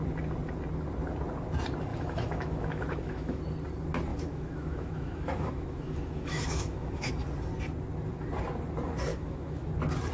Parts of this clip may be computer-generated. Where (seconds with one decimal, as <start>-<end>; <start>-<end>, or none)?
1.9-3.4; 4.1-7.1; 9.1-9.7